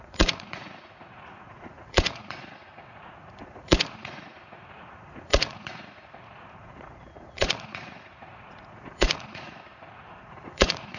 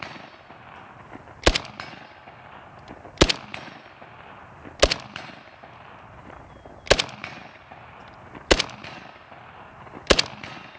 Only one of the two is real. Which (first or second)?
second